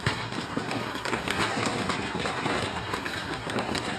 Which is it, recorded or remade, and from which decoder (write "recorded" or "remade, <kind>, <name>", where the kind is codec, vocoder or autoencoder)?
remade, codec, SNAC